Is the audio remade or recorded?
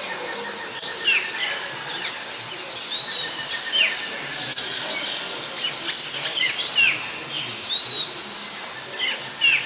recorded